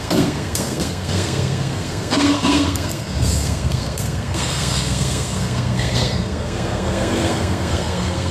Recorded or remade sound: remade